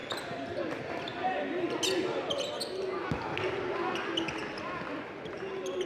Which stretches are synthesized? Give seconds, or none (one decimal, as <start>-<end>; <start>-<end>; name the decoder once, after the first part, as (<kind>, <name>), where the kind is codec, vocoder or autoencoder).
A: none